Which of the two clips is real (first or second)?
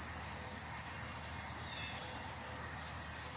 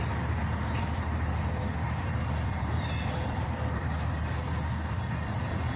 first